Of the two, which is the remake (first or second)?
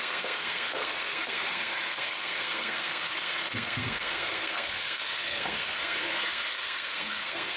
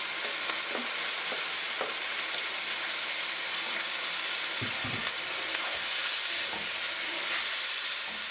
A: first